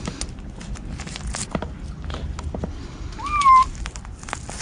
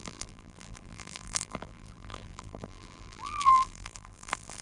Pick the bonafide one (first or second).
first